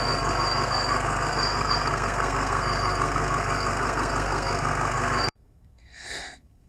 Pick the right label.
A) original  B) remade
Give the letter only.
B